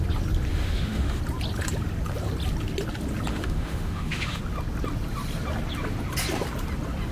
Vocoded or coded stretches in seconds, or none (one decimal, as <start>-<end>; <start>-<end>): 0.5-1.2; 3.3-4.4